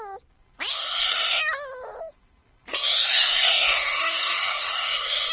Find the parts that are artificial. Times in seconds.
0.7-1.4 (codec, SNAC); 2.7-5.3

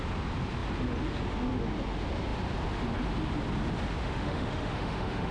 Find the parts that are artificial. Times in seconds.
4.0-5.3 (autoencoder, DAC-VAE)

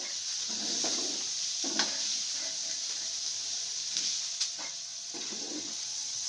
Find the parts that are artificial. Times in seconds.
0.0-0.6 (vocoder, WaveNeXt); 4.4-6.3

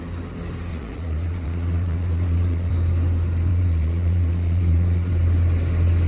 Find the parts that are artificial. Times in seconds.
0.7-2.7 (vocoder, Vocos); 3.5-5.1

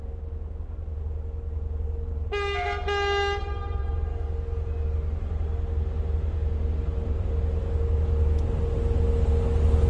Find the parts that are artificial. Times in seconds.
3.4-4.1 (vocoder, BigVGAN v2)

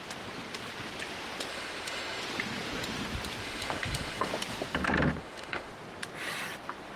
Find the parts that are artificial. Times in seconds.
1.5-2.2 (autoencoder, DAC-VAE); 3.4-4.3; 5.2-5.7

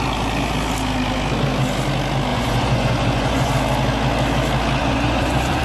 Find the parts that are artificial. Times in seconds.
2.3-3.5 (vocoder, Vocos); 4.8-5.6

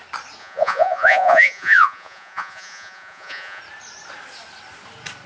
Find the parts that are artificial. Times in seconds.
0.4-3.6 (vocoder, Vocos)